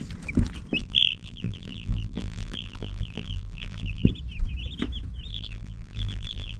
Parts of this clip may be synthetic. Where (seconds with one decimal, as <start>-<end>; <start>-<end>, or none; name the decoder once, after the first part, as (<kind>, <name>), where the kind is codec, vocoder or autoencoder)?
0.8-4.1 (vocoder, BigVGAN v2); 5.3-6.6